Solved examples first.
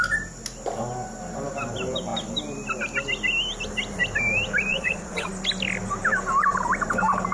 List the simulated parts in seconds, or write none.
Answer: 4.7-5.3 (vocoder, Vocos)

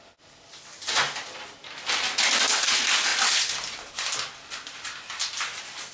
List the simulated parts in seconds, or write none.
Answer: none